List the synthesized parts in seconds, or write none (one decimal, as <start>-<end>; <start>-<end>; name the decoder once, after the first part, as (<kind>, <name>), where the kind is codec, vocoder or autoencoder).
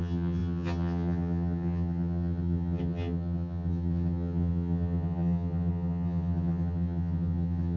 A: 0.0-7.8 (vocoder, HiFi-GAN)